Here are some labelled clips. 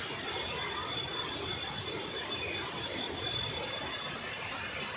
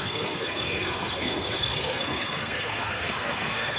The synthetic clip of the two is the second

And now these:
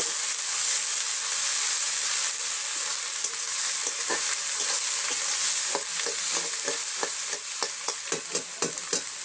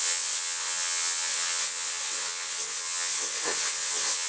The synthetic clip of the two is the second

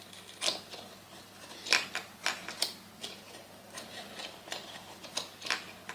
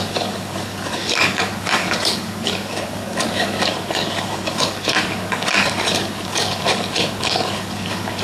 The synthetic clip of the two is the second